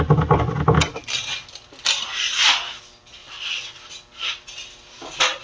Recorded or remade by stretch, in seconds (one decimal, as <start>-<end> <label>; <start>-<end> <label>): 0.0-3.2 recorded; 3.2-3.8 remade; 3.8-5.4 recorded